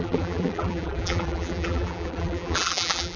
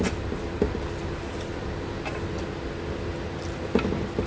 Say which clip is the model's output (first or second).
first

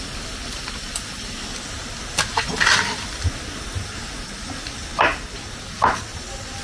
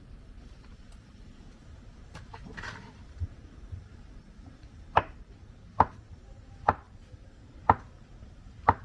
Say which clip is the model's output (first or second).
second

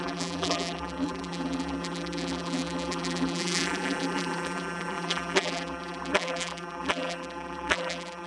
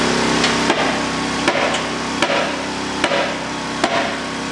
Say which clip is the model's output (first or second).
first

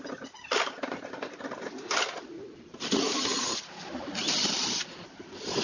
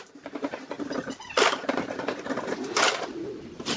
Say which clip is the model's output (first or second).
second